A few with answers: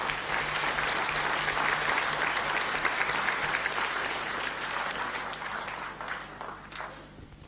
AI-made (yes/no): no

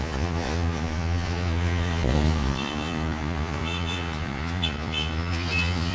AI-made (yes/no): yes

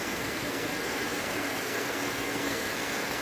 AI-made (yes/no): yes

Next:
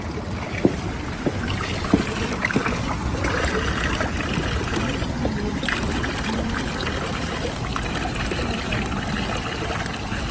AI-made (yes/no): yes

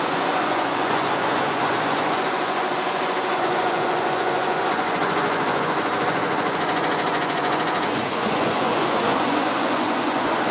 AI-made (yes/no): yes